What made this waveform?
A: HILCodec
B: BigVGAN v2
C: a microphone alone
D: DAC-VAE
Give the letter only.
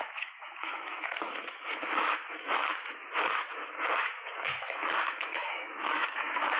D